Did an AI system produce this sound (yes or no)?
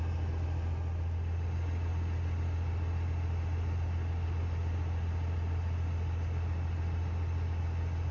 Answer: no